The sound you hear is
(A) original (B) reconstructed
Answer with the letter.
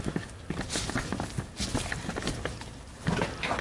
A